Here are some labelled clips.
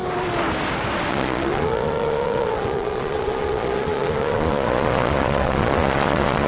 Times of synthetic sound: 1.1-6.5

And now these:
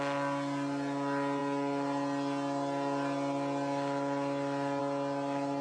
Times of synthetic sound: none

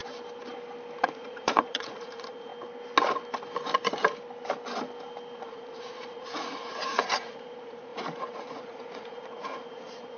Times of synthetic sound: 1.0-2.5; 5.4-10.2

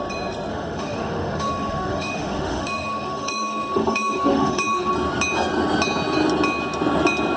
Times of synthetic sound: 0.5-4.9

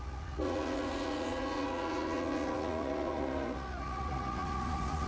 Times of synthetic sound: 0.0-5.1